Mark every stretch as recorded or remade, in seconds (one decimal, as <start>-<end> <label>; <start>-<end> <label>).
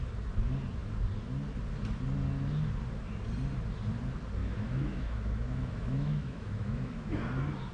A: 0.0-4.4 recorded; 4.4-7.2 remade; 7.2-7.7 recorded